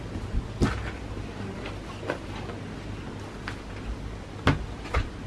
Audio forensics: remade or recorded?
recorded